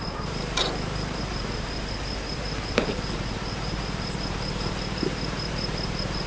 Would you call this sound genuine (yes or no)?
no